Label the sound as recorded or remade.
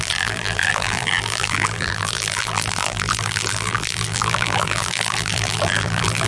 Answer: remade